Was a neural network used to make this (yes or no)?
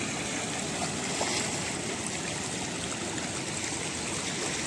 no